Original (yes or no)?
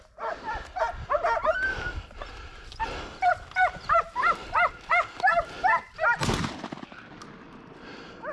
yes